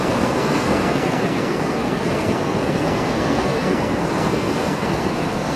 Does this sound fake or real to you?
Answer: fake